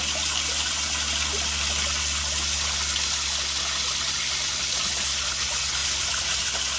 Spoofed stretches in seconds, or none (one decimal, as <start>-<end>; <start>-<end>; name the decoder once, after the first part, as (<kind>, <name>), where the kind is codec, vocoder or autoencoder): none

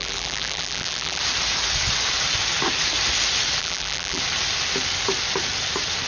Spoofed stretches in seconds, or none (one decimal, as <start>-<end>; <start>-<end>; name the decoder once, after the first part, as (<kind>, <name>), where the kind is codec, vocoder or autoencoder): 0.0-1.2 (vocoder, BigVGAN v2); 3.6-4.2

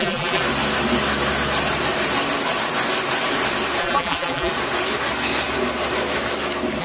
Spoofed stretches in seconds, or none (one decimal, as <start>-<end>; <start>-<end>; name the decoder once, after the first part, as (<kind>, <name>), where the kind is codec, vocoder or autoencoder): 0.0-0.4 (vocoder, BigVGAN v2); 3.8-4.5

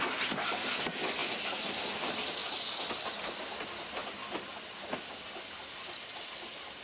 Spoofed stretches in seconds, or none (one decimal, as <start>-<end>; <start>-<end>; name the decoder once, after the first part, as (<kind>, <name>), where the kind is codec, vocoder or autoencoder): 1.2-1.7 (vocoder, BigVGAN v2); 2.4-3.1; 4.0-5.1

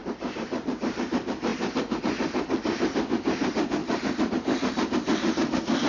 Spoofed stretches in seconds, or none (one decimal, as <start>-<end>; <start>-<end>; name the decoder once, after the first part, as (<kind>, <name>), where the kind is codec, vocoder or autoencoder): 0.0-0.8 (vocoder, BigVGAN v2)